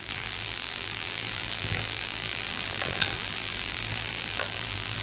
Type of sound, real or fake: fake